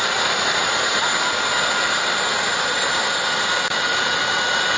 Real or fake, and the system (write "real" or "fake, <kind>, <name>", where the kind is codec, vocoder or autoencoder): real